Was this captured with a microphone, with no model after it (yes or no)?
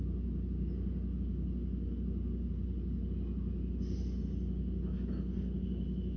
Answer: yes